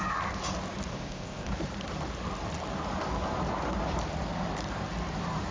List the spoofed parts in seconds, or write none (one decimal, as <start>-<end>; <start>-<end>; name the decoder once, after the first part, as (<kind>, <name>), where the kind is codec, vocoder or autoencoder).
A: 0.9-1.5 (codec, ZipCodec)